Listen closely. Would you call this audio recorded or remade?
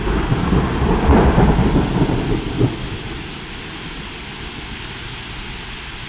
recorded